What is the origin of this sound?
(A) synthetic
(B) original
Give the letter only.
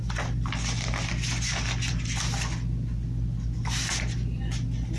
B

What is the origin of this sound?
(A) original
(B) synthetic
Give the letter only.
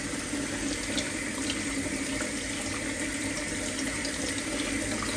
A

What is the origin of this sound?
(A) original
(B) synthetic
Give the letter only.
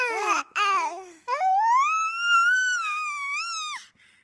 B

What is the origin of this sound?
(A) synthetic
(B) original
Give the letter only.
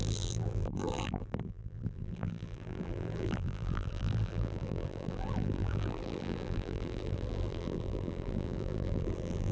A